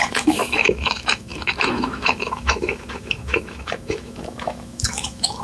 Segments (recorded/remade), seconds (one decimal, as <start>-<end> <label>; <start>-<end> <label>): 0.0-5.4 remade